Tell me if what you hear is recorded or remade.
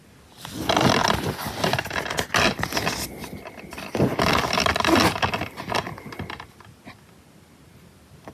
recorded